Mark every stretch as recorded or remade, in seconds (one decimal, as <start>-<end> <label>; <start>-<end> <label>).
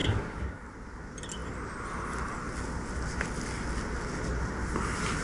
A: 0.0-0.7 remade; 0.7-5.2 recorded